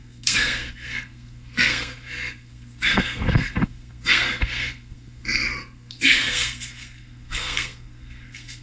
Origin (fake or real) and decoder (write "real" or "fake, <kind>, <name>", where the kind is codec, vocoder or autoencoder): fake, codec, SNAC